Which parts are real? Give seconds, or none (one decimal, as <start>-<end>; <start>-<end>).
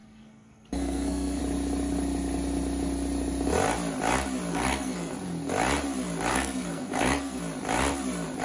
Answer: 1.4-4.5; 5.1-6.3; 7.4-8.4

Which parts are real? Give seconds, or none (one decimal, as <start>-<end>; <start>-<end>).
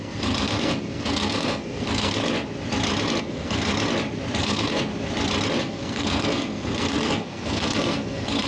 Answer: 2.2-3.2; 3.7-4.4; 4.9-5.6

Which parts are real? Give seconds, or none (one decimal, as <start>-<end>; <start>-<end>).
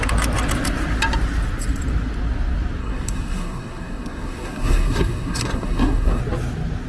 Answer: 0.0-2.8; 6.2-6.9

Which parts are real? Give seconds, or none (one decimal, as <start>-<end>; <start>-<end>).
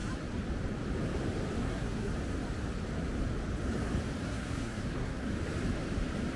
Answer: 0.0-1.6; 2.1-4.2; 5.3-6.4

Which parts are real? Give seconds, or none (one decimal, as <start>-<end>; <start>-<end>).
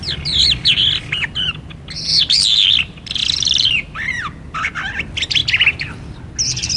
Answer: 0.0-6.8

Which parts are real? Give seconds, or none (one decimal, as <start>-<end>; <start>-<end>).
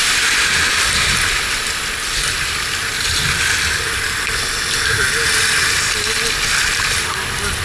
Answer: 0.0-7.6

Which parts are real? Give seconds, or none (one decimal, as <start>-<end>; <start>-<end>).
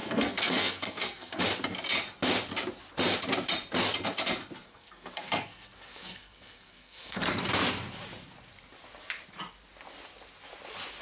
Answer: 1.4-4.7; 7.2-11.0